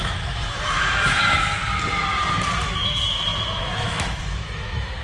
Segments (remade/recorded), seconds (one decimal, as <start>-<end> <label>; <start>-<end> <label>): 0.0-1.6 remade; 1.6-2.6 recorded; 2.6-5.0 remade